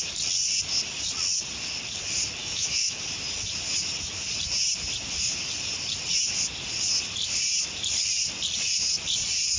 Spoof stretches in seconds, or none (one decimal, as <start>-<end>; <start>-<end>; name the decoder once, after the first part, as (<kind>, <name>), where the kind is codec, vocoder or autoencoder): 2.4-3.0 (autoencoder, DAC-VAE)